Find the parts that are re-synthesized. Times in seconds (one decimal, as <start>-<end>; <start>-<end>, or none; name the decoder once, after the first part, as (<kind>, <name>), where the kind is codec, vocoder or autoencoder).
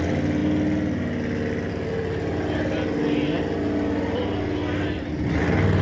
none